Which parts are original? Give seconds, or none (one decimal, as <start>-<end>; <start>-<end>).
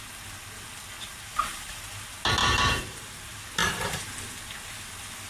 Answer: 0.0-1.1; 1.7-2.4; 3.2-3.6; 4.1-5.3